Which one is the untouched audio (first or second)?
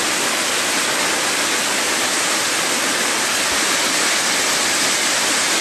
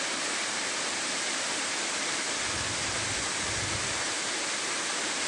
first